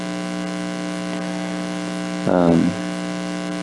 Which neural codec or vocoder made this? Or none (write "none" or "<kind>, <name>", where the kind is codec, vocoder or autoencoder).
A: none